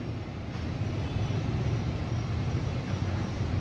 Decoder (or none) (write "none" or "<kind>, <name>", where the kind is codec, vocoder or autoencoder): none